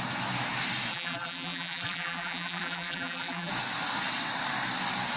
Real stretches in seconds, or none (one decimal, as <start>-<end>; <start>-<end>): 0.0-0.9; 3.5-5.2